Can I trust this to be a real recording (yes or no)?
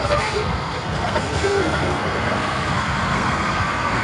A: no